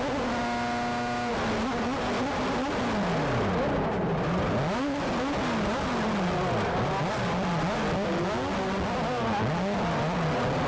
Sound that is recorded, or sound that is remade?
recorded